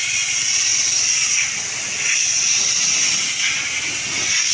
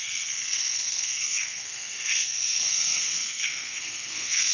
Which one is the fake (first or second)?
second